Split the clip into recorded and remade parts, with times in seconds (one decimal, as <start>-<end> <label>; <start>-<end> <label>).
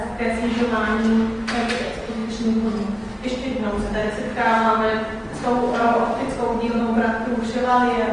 0.0-8.1 recorded